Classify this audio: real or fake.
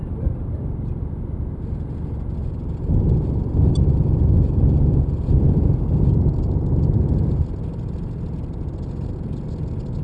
real